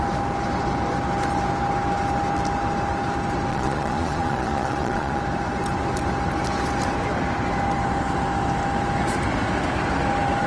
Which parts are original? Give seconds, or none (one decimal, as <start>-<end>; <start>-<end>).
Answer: 0.0-3.5; 5.2-10.5